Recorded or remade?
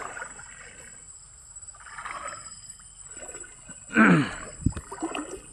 recorded